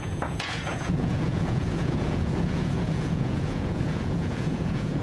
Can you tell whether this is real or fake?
fake